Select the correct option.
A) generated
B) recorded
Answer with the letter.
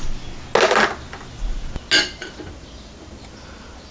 B